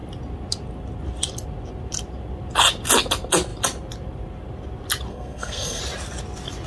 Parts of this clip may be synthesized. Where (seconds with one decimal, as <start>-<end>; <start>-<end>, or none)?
5.1-5.8